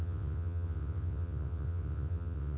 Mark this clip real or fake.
fake